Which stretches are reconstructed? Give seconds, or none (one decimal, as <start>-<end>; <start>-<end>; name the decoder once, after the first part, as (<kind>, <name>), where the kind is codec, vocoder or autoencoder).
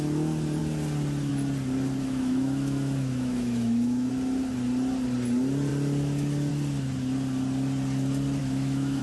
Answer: 2.0-4.1 (autoencoder, DAC-VAE); 8.4-9.0